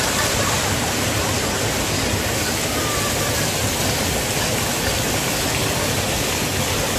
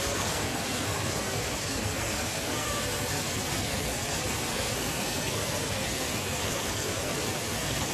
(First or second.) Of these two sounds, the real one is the first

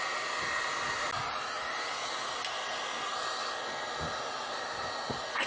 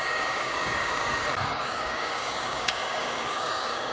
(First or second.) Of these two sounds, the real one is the first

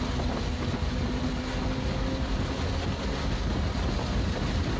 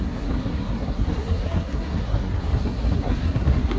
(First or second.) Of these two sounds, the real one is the first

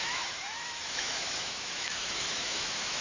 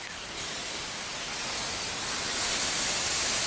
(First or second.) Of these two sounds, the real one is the second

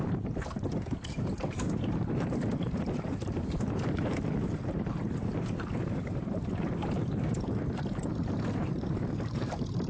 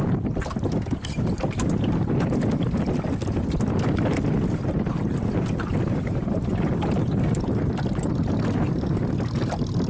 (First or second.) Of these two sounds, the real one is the second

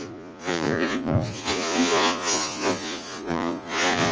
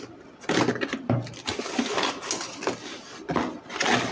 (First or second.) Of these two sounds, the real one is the second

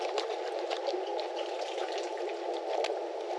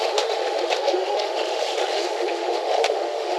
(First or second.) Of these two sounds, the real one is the first